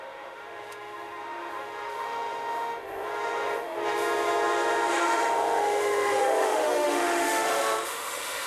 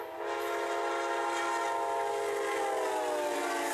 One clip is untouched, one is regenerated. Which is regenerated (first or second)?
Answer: first